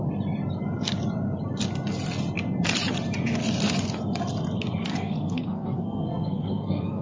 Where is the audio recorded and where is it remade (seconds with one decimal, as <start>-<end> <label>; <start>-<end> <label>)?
0.0-4.9 recorded; 4.9-7.0 remade